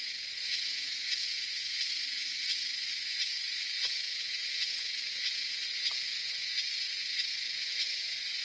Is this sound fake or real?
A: fake